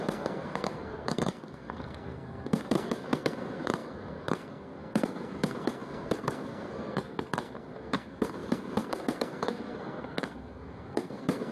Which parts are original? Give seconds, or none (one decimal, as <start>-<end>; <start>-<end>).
none